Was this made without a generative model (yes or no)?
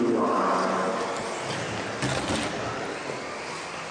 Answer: yes